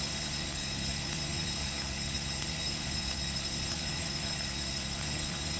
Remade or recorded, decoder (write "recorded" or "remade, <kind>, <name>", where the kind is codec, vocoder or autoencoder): remade, codec, HILCodec